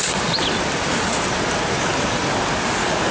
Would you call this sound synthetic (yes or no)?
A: no